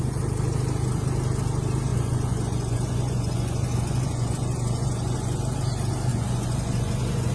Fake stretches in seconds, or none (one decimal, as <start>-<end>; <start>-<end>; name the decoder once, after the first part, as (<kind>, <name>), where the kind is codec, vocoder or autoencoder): 1.9-5.4 (vocoder, Vocos); 6.1-7.3

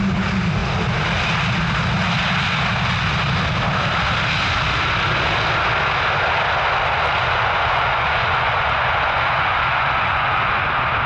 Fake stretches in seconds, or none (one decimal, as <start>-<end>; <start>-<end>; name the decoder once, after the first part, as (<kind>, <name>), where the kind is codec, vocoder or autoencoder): 7.2-10.7 (vocoder, Vocos)